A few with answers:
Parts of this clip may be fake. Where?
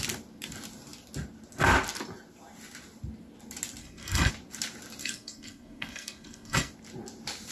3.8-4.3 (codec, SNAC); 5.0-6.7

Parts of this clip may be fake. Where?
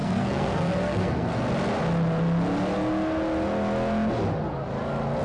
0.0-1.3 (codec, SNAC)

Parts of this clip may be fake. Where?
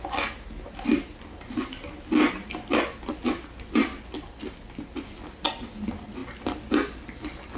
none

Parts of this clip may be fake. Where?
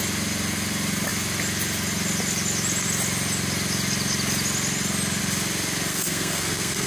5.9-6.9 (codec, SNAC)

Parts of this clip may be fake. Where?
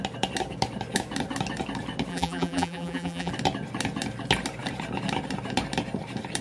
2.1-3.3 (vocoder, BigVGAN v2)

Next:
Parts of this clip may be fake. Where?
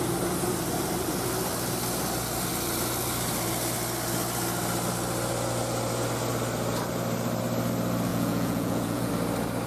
8.1-9.1 (vocoder, Vocos)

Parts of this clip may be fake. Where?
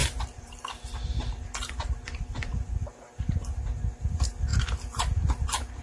0.0-3.5 (vocoder, BigVGAN v2)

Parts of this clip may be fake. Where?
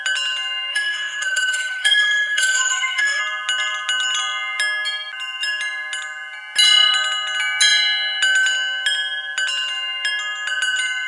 0.7-3.2 (autoencoder, DAC-VAE)